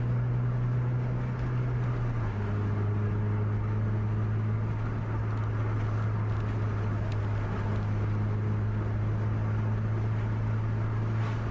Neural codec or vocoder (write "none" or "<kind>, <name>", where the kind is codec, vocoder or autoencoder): none